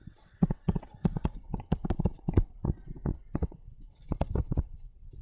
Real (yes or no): no